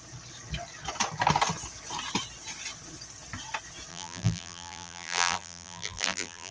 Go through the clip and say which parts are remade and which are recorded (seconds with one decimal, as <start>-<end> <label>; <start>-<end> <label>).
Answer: 0.0-3.9 recorded; 3.9-6.5 remade